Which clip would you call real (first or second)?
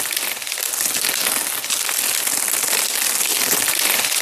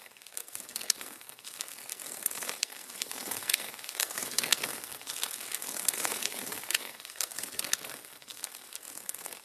first